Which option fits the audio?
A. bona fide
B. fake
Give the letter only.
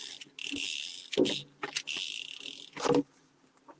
A